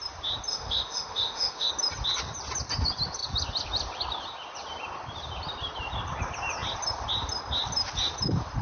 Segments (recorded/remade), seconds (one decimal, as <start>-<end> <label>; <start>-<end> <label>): 0.0-0.5 recorded; 0.5-1.7 remade; 1.7-8.6 recorded